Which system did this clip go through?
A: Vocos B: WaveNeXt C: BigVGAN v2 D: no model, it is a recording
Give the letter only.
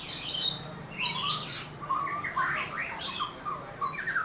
C